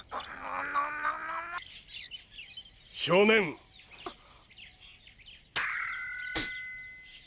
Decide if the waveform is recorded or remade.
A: recorded